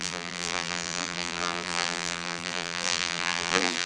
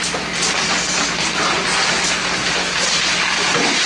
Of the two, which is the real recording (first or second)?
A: second